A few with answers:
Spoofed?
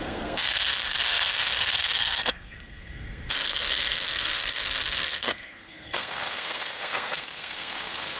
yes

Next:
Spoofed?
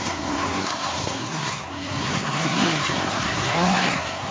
yes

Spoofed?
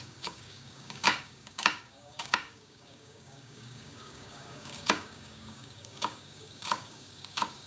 yes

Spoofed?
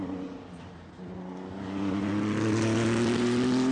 no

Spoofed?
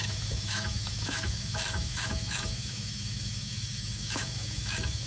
yes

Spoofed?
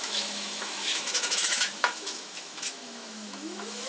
yes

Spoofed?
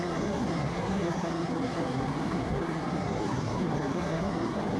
yes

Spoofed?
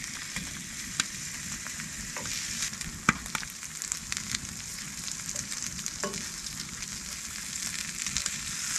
no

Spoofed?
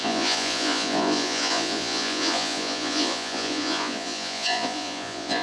yes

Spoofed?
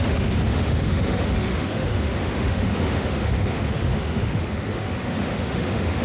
yes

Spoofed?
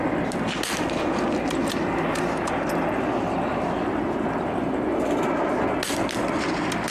no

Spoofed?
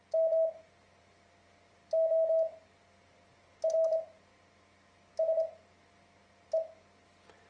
no